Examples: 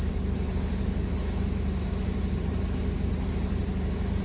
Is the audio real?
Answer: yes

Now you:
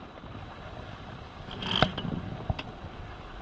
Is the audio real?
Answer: yes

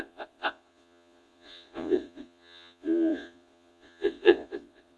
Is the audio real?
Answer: no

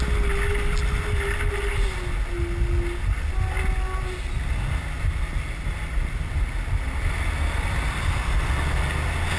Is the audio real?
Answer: yes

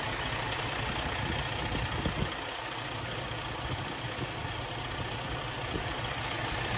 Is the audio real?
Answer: yes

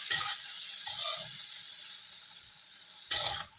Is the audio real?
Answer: no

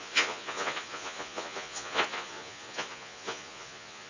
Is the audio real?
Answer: no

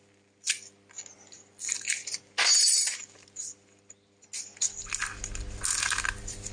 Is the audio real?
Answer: yes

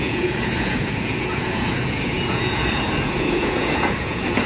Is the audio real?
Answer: no